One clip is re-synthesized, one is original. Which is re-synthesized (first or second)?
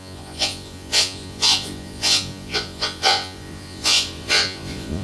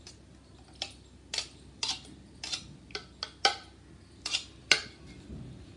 first